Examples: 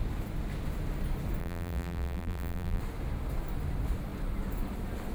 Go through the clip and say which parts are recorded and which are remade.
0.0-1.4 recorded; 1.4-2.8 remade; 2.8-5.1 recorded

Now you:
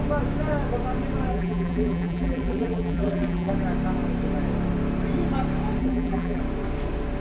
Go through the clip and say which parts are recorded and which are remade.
0.0-1.3 recorded; 1.3-3.5 remade; 3.5-5.8 recorded; 5.8-6.4 remade; 6.4-7.2 recorded